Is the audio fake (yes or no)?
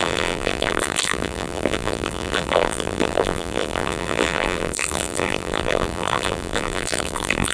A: yes